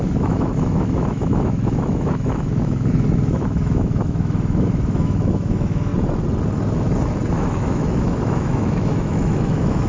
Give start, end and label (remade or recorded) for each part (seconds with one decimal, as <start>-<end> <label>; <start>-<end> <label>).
0.0-5.9 remade; 5.9-7.3 recorded; 7.3-9.9 remade